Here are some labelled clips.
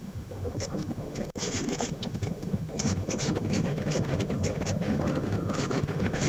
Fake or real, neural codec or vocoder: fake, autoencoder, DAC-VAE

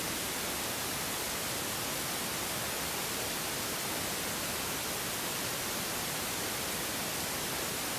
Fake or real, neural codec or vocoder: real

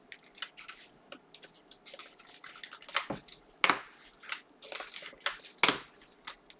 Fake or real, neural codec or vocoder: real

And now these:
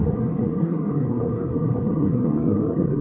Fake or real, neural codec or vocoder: fake, codec, SNAC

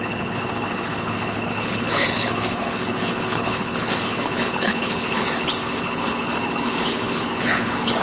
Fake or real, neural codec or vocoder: fake, codec, HILCodec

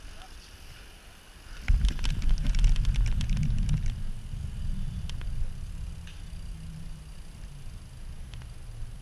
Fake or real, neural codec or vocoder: real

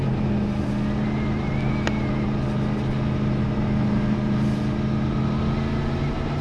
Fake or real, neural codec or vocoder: real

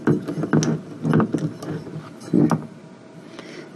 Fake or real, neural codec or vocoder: real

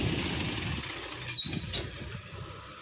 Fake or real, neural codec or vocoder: real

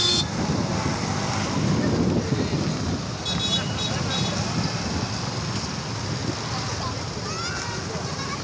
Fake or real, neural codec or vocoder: real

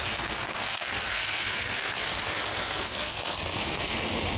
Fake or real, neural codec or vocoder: fake, codec, SNAC